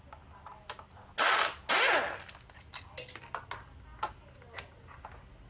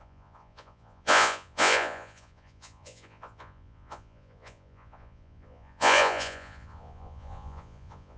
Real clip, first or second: first